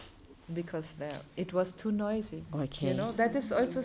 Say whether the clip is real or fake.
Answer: real